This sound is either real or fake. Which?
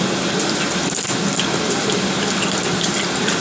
real